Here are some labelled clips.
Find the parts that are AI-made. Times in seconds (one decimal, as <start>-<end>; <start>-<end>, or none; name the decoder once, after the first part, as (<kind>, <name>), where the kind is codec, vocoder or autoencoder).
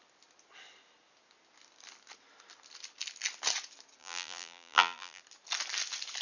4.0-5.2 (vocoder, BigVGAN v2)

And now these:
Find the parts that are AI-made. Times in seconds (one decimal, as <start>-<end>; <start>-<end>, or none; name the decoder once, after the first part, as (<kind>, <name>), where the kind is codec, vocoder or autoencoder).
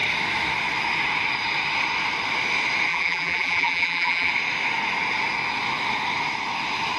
2.9-4.3 (vocoder, BigVGAN v2)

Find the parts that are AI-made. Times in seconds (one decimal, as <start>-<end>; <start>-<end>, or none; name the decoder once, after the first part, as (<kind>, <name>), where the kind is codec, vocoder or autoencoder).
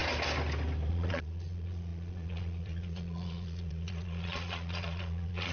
0.9-5.5 (vocoder, Vocos)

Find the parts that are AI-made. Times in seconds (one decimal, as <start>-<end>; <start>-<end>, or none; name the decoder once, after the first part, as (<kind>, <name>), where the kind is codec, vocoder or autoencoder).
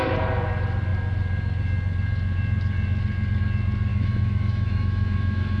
3.9-5.6 (autoencoder, DAC-VAE)